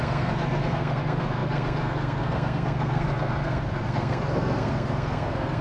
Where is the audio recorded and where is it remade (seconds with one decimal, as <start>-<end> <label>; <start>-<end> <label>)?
0.0-5.6 remade